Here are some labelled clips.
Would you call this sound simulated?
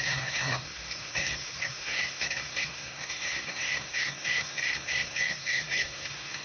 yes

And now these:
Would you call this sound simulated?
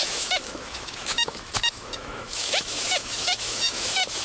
yes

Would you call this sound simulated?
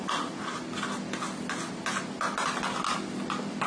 no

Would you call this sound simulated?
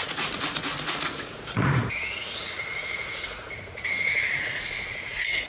yes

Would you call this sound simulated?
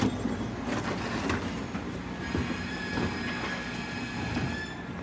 no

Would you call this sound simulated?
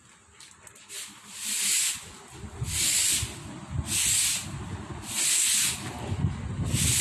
no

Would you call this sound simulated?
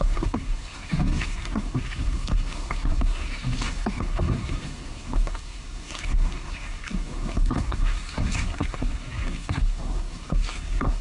yes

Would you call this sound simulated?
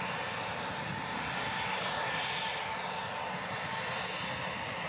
no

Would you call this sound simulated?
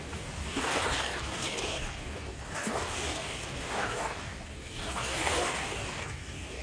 yes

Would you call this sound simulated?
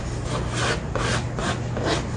no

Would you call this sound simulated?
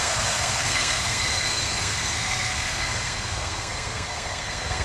yes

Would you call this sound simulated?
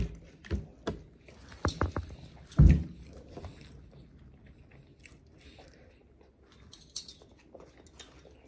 no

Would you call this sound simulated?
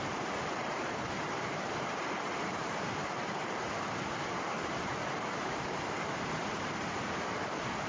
yes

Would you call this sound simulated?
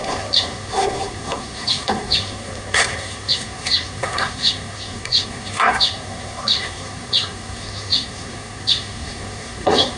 yes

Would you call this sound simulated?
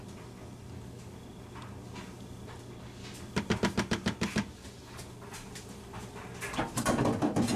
no